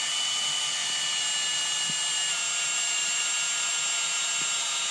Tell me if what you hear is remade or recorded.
recorded